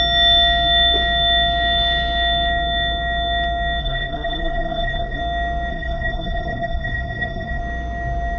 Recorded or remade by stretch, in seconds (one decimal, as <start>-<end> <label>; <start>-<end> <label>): 0.0-3.8 recorded; 3.8-5.2 remade; 5.2-5.7 recorded; 5.7-7.6 remade; 7.6-8.4 recorded